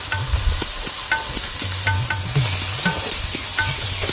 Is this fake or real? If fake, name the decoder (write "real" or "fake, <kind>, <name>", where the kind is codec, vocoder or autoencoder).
real